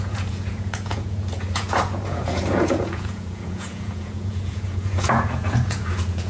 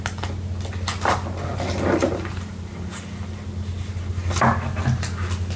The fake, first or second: first